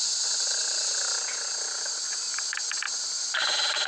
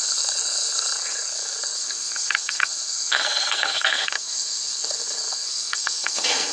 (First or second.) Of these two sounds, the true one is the first